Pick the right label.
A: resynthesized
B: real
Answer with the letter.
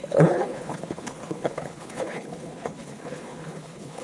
A